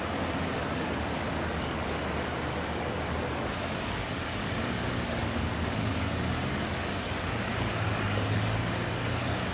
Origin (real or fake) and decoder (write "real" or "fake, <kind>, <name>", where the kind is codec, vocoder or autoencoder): fake, codec, DAC